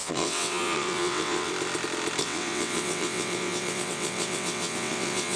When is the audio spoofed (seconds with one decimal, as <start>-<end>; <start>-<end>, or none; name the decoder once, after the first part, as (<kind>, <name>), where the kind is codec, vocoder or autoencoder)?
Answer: 0.0-1.5 (vocoder, WaveNeXt); 2.2-5.4